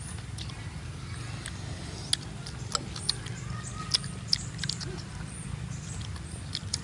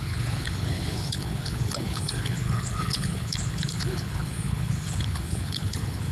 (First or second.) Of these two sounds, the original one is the first